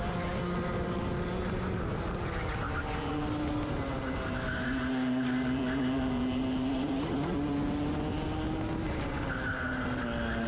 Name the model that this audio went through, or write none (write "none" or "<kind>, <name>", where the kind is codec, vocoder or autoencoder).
none